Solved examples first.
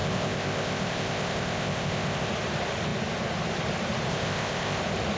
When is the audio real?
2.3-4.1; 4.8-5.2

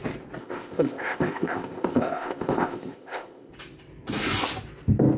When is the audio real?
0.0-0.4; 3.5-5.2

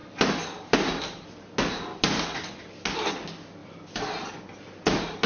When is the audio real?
0.0-5.3

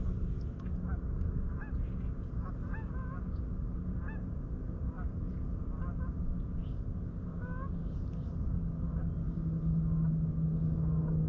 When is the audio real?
0.0-11.3